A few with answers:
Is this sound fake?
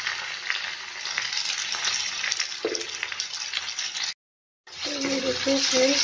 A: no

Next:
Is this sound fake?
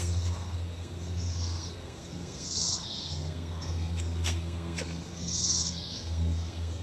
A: yes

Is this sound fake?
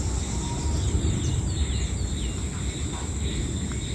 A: no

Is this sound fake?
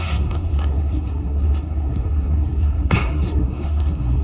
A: yes